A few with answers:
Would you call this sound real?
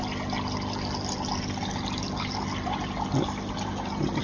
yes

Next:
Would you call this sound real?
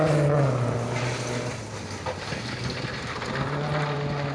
yes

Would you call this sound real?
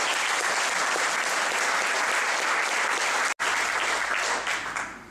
yes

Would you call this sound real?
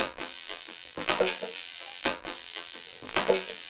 no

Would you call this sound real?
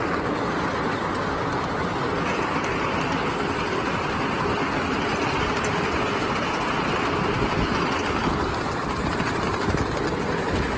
yes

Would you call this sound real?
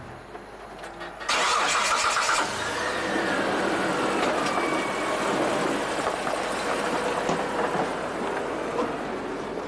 yes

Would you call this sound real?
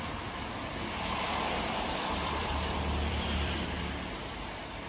no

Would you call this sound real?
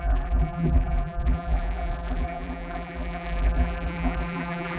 no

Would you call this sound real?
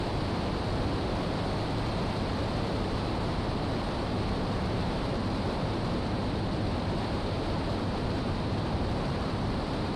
no